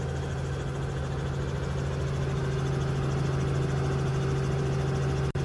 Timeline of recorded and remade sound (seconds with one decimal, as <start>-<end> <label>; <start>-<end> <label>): 0.0-5.4 recorded